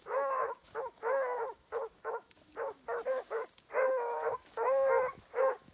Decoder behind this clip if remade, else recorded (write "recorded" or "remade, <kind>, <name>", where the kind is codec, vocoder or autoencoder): remade, autoencoder, DAC-VAE